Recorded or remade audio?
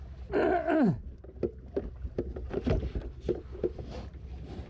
recorded